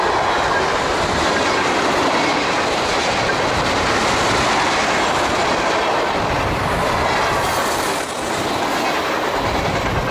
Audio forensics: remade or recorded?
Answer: recorded